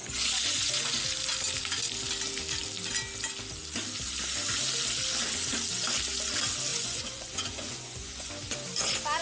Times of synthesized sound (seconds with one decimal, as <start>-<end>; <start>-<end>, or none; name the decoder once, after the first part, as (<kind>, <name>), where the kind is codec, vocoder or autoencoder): 0.0-1.0 (vocoder, Vocos); 6.7-8.3